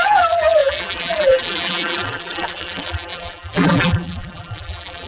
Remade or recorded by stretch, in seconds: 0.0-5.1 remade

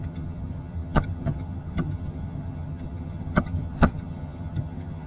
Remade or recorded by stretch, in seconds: 0.0-5.1 remade

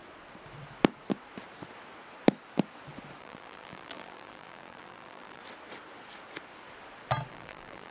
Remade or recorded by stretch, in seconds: 0.0-3.2 recorded; 3.2-5.4 remade; 5.4-7.3 recorded; 7.3-7.9 remade

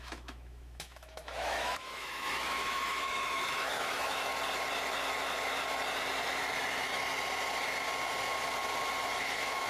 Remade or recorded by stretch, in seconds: 0.0-4.3 remade; 4.3-9.2 recorded; 9.2-9.7 remade

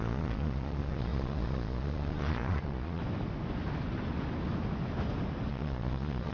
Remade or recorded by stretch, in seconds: 0.0-3.0 remade; 3.0-5.5 recorded; 5.5-6.3 remade

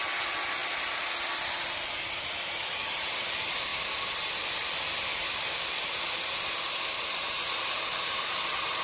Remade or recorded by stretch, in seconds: 0.0-5.1 recorded; 5.1-6.5 remade; 6.5-8.8 recorded

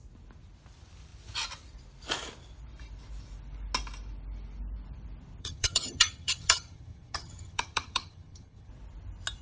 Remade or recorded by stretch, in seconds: 0.0-5.4 recorded; 5.4-8.7 remade; 8.7-9.4 recorded